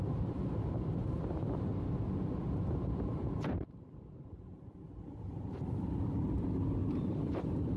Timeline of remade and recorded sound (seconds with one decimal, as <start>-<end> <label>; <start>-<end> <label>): 0.0-1.7 remade; 1.7-2.5 recorded; 2.5-7.8 remade